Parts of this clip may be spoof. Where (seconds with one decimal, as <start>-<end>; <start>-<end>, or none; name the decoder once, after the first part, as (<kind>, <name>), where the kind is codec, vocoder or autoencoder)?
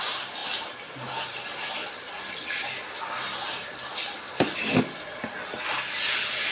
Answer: none